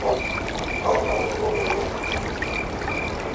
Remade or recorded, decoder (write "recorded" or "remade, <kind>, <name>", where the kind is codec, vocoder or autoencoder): recorded